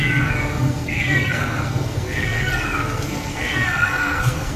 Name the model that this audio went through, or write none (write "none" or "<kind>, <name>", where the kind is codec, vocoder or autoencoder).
codec, SNAC